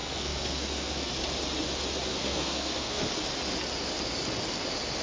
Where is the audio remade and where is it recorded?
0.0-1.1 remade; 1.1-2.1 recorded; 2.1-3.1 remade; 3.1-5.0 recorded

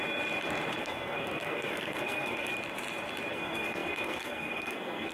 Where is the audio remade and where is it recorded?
0.0-0.8 recorded; 0.8-2.5 remade; 2.5-3.3 recorded; 3.3-5.1 remade

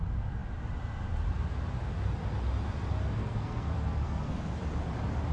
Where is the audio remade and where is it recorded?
0.0-3.2 recorded; 3.2-4.4 remade; 4.4-5.3 recorded

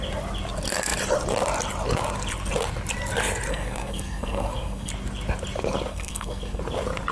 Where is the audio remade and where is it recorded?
0.0-3.5 recorded; 3.5-4.9 remade; 4.9-5.9 recorded; 5.9-6.6 remade; 6.6-7.1 recorded

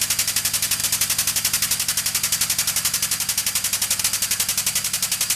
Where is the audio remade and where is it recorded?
0.0-5.4 recorded

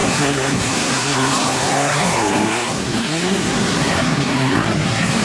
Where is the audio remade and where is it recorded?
0.0-5.2 remade